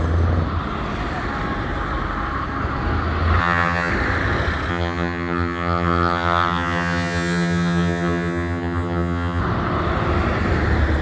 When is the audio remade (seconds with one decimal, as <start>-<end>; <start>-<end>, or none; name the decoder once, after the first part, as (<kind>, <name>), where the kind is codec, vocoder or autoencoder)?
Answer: 3.4-3.9 (vocoder, HiFi-GAN); 4.7-9.4